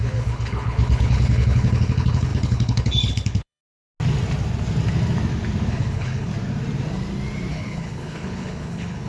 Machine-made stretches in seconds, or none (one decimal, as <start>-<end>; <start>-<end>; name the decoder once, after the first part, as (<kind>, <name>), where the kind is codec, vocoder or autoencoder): 0.0-3.6 (codec, HILCodec); 5.7-6.3; 7.5-9.1